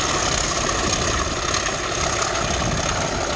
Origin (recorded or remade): recorded